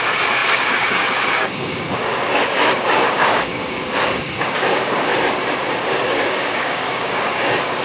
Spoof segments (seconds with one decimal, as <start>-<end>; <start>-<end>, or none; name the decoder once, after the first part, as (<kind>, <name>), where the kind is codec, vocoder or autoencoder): 0.0-5.1 (codec, DAC); 5.7-7.8